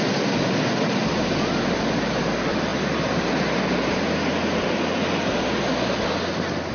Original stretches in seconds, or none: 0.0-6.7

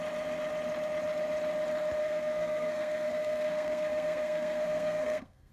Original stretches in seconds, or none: 0.0-2.0

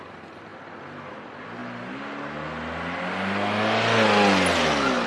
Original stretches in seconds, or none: 0.0-5.1

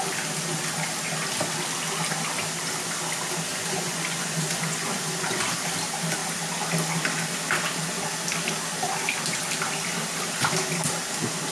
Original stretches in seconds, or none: 0.0-3.5; 5.5-11.5